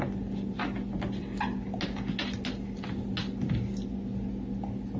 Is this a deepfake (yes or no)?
no